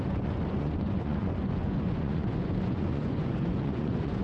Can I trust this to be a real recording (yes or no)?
no